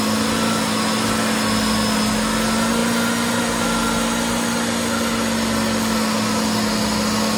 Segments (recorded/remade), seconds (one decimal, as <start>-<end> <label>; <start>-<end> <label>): 0.0-7.4 recorded